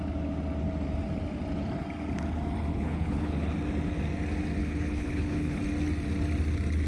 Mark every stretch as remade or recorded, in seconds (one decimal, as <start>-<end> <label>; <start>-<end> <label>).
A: 0.0-2.7 recorded; 2.7-3.5 remade; 3.5-4.6 recorded; 4.6-5.6 remade; 5.6-6.9 recorded